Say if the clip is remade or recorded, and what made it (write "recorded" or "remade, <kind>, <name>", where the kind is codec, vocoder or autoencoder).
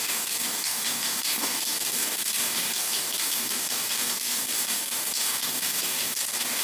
remade, codec, DAC